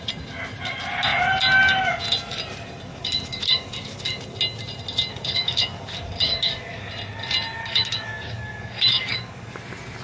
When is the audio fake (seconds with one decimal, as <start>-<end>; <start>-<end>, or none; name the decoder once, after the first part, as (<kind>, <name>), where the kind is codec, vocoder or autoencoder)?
2.9-4.2 (codec, DAC); 5.1-6.9; 7.6-9.6